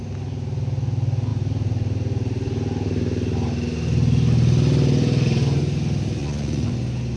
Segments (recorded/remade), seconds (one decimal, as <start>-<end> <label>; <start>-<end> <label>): 0.0-6.2 recorded; 6.2-6.7 remade; 6.7-7.2 recorded